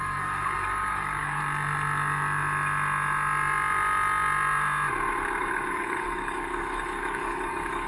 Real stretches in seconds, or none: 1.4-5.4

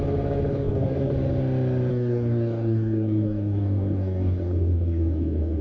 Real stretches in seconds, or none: 0.0-0.5; 1.1-1.9

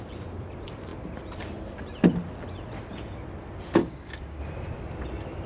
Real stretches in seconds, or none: 0.0-3.8; 4.4-5.5

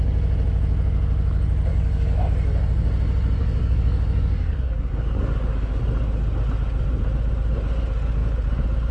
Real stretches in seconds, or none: 0.0-1.7; 2.2-3.4; 5.8-8.9

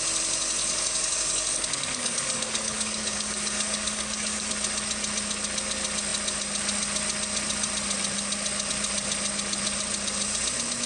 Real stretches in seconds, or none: 0.0-0.6; 4.5-10.9

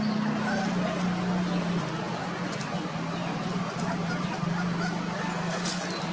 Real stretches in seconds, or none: 0.0-6.1

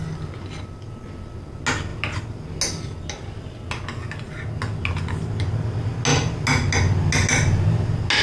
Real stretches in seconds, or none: 0.0-8.2

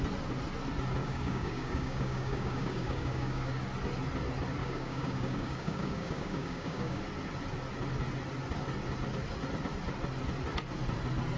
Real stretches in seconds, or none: 0.0-1.0; 3.6-4.6; 7.0-11.4